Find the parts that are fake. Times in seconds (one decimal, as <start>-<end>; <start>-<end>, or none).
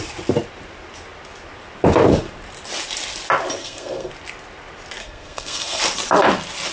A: 3.6-4.1; 5.0-5.8